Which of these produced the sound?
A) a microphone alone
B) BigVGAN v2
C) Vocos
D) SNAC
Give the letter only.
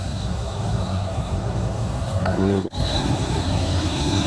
D